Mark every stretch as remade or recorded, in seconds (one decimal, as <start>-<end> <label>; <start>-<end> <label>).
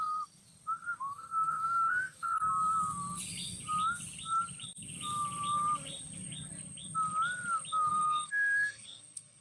0.0-1.1 recorded; 1.1-2.5 remade; 2.5-7.9 recorded; 7.9-9.4 remade